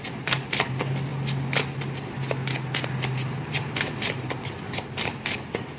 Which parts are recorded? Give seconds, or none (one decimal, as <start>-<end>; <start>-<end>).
0.0-5.8